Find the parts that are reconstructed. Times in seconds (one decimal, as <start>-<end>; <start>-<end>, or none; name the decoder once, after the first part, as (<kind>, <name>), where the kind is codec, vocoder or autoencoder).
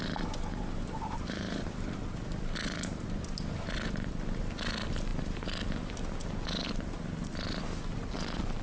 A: 0.7-2.0 (vocoder, BigVGAN v2)